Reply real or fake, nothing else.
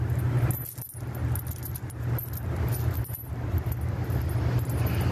real